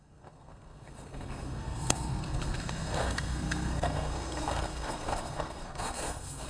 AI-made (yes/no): yes